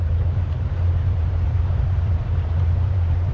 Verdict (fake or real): fake